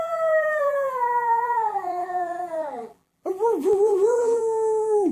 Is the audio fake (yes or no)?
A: yes